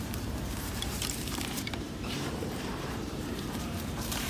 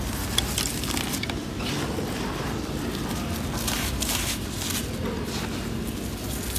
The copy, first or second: first